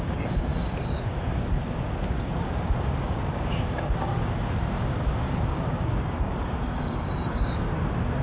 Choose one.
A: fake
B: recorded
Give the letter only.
A